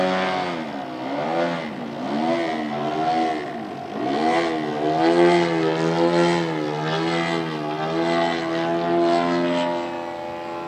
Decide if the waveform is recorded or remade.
recorded